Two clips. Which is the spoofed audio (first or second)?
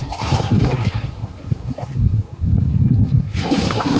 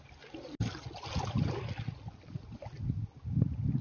first